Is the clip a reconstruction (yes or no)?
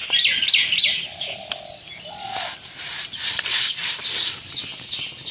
no